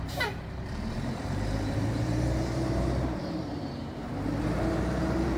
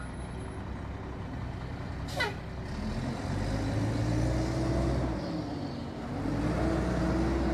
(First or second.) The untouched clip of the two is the second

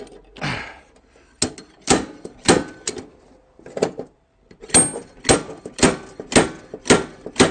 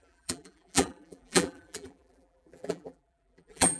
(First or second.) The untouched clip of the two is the first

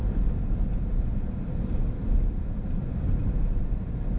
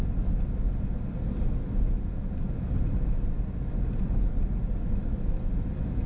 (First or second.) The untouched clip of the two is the second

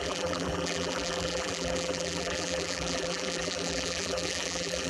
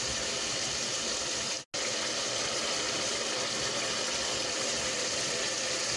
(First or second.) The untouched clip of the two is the second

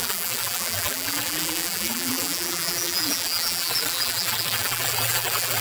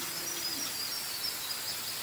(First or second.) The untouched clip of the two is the second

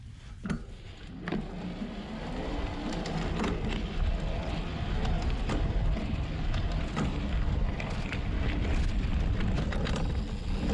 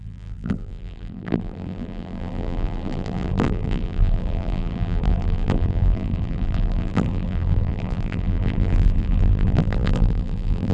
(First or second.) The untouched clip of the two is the first